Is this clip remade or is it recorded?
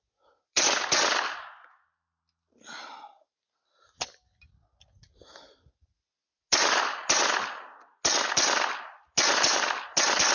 recorded